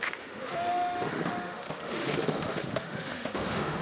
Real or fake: fake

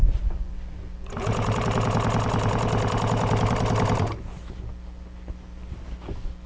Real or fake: real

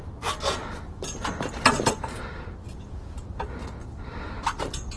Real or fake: real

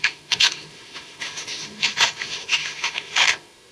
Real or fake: fake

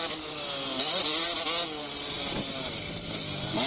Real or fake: real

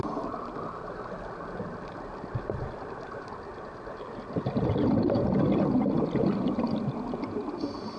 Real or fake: real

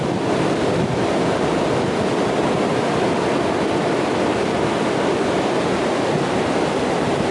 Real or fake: real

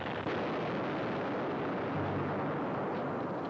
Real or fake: real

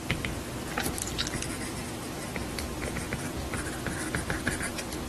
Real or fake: real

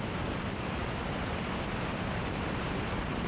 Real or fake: real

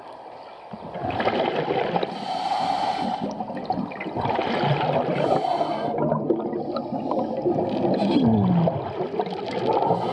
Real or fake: real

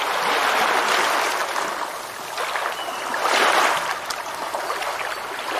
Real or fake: real